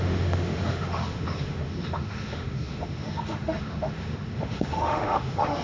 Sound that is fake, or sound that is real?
fake